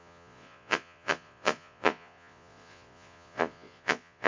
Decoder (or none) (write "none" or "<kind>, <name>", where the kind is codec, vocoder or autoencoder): vocoder, Vocos